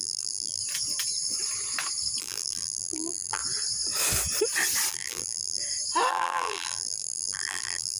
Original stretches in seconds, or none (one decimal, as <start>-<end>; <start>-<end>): 0.6-2.2; 3.4-4.9; 5.6-6.1